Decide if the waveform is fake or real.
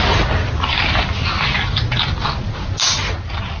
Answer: real